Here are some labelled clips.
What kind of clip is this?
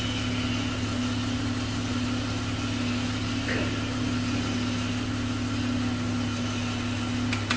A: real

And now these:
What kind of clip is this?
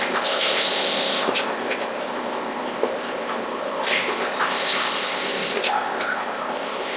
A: fake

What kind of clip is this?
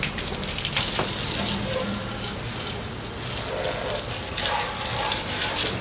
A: real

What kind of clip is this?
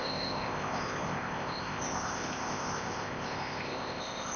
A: fake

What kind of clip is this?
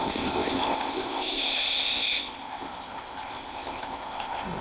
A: fake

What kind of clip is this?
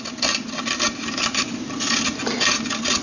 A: real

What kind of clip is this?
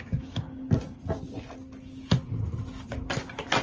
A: real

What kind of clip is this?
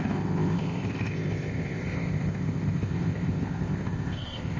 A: fake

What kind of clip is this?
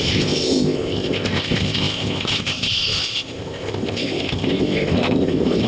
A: fake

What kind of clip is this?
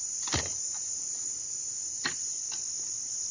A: real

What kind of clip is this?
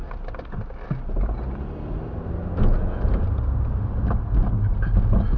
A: real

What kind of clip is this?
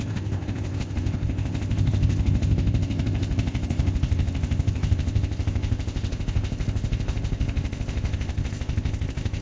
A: fake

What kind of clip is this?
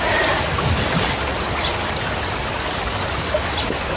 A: real